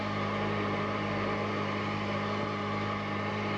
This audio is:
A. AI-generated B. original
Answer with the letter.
B